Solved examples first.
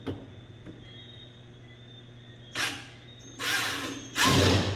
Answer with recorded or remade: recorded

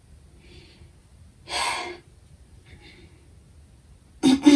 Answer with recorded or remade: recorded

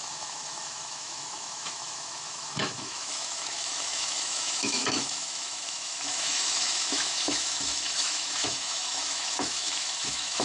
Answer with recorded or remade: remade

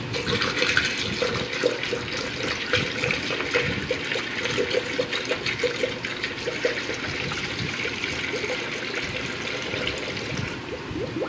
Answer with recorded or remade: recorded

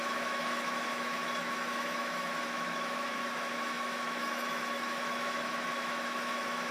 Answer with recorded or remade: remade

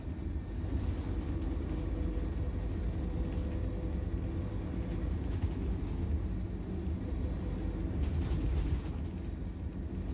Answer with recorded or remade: recorded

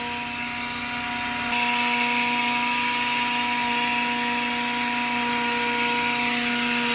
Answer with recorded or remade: recorded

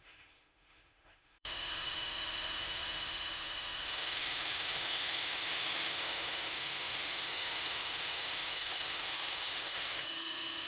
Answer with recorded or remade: remade